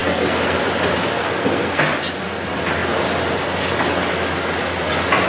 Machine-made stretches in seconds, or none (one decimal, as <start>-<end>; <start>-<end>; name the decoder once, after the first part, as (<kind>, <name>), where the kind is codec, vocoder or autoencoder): 0.0-0.6 (codec, SNAC); 1.2-1.8